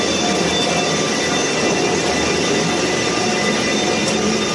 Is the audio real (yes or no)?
yes